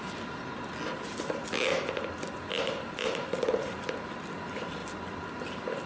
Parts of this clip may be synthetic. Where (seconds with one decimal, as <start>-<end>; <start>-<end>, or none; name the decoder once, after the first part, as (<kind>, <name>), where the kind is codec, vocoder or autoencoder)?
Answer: none